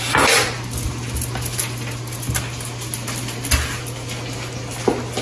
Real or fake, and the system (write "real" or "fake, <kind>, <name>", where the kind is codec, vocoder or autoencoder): real